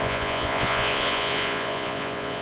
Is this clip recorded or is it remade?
remade